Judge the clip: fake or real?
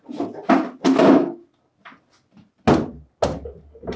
real